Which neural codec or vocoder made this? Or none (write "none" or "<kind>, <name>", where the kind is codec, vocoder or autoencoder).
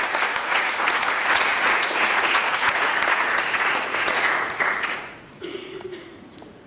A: vocoder, Vocos